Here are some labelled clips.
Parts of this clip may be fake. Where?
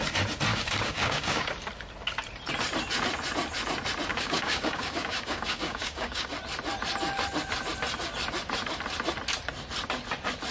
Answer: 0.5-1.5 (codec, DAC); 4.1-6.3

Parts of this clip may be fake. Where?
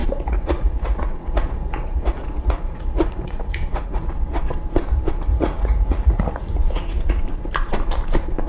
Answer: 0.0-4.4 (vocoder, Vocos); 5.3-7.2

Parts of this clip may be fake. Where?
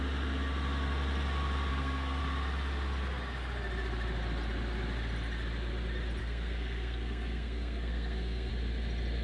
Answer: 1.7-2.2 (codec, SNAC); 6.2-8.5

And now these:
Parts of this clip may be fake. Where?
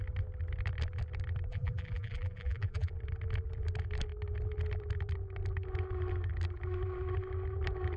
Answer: 1.5-2.9 (vocoder, BigVGAN v2)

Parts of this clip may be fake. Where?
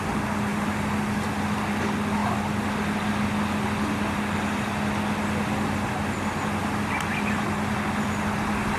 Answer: none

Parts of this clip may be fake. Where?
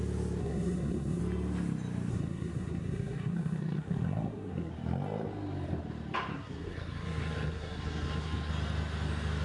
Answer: 0.4-1.2 (codec, SNAC); 2.1-4.7; 6.3-8.5